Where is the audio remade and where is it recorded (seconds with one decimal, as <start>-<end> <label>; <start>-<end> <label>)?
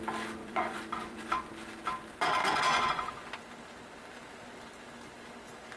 0.0-0.4 recorded; 0.4-1.5 remade; 1.5-2.4 recorded; 2.4-3.1 remade; 3.1-5.8 recorded